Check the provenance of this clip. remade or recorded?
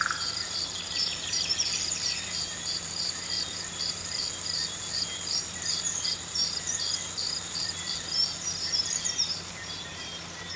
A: remade